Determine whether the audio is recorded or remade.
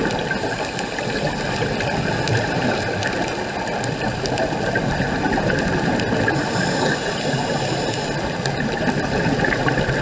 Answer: recorded